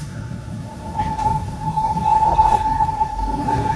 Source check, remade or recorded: remade